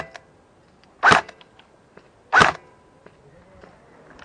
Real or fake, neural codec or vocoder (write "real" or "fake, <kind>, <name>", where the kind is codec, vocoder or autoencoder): real